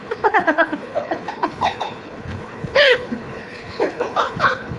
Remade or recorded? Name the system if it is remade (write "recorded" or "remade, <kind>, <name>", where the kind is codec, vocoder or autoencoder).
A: remade, codec, HILCodec